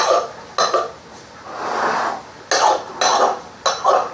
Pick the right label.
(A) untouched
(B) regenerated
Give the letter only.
A